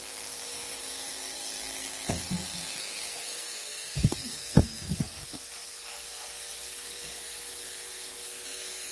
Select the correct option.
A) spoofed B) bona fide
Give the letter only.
A